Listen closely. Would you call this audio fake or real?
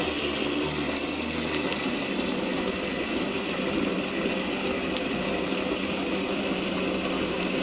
real